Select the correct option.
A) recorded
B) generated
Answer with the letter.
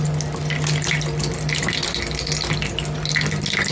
A